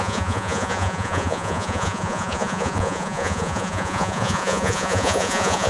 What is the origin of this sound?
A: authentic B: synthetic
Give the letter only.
B